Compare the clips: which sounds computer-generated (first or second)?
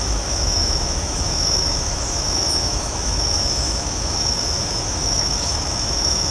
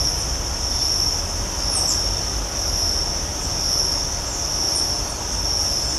first